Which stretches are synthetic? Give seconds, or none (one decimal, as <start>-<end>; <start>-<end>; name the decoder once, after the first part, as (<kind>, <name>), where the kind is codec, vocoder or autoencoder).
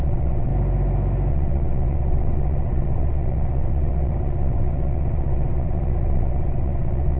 0.0-0.5 (vocoder, WaveNeXt); 1.3-7.2